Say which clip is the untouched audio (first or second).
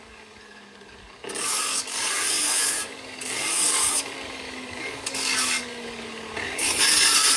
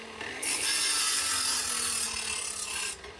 second